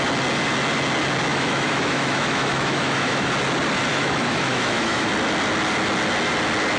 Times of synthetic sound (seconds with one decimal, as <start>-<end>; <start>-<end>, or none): 1.3-3.3; 3.9-5.1